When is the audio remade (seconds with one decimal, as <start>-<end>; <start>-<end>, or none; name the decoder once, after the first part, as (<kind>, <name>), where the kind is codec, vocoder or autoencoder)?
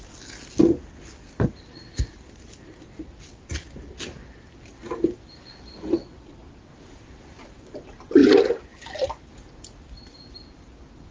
none